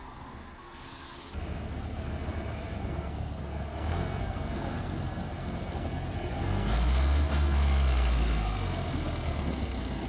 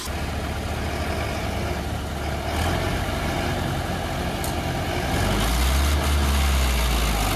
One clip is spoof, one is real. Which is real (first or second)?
second